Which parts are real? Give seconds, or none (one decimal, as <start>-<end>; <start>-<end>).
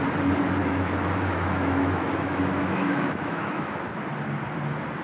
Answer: 0.0-0.6; 3.6-5.0